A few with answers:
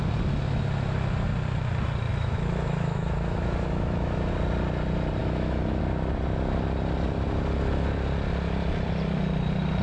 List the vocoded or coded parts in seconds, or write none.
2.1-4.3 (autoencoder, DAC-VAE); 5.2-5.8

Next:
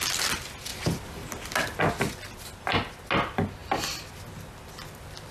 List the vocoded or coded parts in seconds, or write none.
none

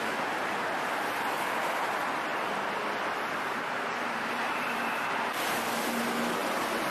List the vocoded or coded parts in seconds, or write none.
3.9-4.7 (vocoder, BigVGAN v2); 6.4-6.9

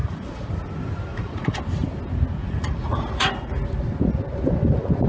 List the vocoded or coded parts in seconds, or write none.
0.0-0.5 (vocoder, Vocos); 1.1-1.6; 2.4-3.5

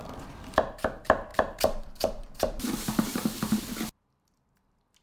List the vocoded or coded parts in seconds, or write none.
1.3-3.6 (vocoder, BigVGAN v2)

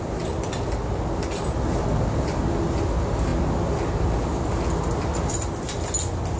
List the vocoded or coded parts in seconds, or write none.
none

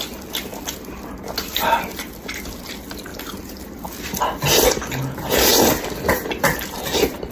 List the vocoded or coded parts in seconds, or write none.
3.1-3.6 (vocoder, BigVGAN v2); 5.5-7.3

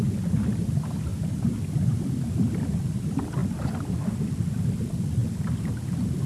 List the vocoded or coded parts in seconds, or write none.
0.0-5.2 (vocoder, BigVGAN v2)